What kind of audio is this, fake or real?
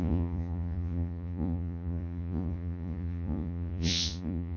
fake